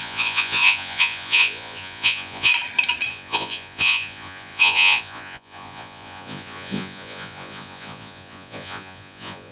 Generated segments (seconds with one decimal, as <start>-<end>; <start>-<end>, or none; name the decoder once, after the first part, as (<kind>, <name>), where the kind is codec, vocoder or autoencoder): 0.0-2.5 (vocoder, Vocos); 3.1-9.5